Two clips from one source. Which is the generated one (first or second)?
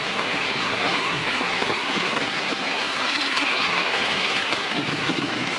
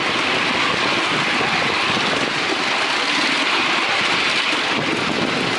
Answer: first